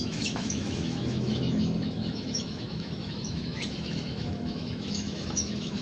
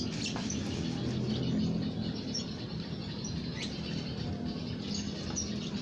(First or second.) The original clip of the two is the second